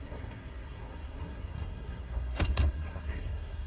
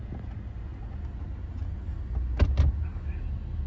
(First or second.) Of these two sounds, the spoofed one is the first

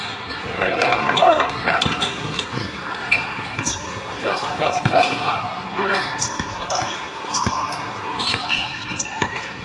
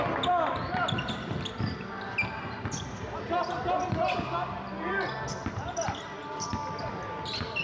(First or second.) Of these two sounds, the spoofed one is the first